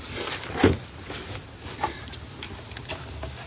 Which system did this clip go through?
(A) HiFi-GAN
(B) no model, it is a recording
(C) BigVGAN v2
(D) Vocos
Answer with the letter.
B